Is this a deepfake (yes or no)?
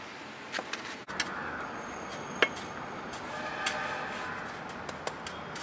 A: no